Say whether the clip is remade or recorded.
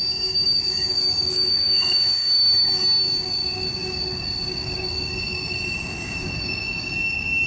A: remade